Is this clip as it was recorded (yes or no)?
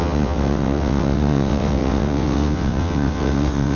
no